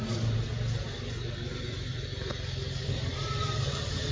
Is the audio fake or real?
real